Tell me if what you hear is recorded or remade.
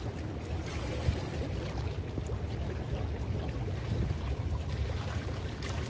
recorded